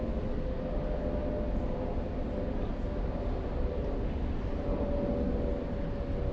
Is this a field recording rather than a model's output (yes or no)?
yes